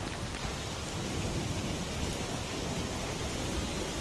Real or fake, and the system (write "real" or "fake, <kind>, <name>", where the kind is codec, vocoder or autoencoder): real